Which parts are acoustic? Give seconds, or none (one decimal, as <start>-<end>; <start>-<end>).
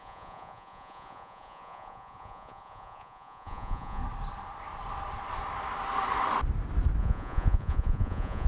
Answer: 4.0-7.0